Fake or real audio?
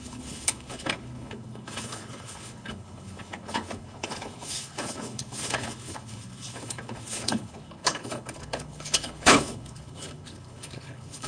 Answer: fake